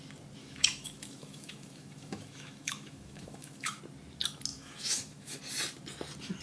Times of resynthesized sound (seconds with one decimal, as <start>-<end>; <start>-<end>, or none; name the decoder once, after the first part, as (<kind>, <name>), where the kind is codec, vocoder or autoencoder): 0.4-3.8 (autoencoder, DAC-VAE); 4.5-5.4